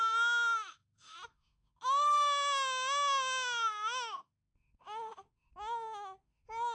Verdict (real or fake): fake